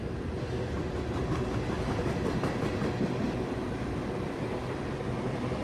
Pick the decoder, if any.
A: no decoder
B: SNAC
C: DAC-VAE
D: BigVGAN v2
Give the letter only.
A